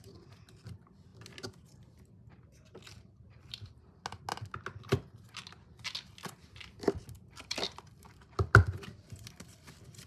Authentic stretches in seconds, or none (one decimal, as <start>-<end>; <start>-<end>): 0.0-2.9; 3.9-6.4; 9.3-10.1